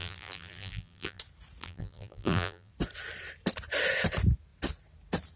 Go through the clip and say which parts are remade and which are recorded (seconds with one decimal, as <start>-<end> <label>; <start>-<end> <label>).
0.0-1.2 remade; 1.2-1.6 recorded; 1.6-2.7 remade; 2.7-5.4 recorded